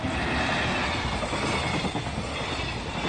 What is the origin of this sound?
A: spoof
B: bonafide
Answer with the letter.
B